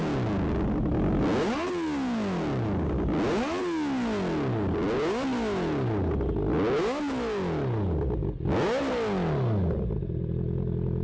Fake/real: real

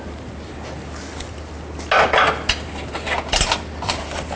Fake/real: real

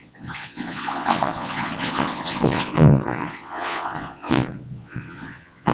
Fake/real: fake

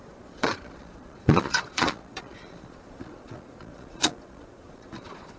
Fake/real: fake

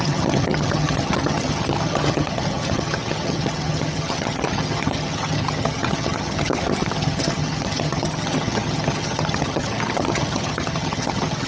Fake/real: fake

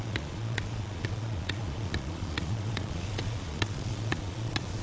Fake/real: fake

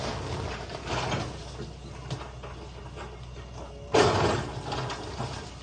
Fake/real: real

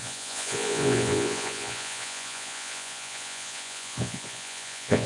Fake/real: fake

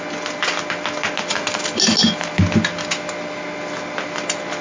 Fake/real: real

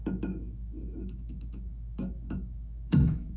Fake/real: fake